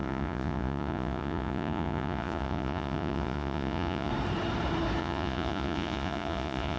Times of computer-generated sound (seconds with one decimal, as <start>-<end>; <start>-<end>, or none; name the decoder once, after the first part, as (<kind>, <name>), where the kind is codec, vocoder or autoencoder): 0.0-4.1 (vocoder, Vocos); 5.0-6.8